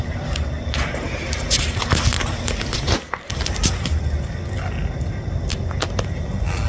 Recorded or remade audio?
recorded